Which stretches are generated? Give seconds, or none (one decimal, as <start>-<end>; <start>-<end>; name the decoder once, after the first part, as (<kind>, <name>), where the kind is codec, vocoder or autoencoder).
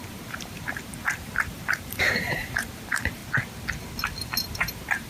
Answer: 0.0-3.2 (vocoder, BigVGAN v2); 4.4-5.1